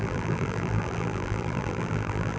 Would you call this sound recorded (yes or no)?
no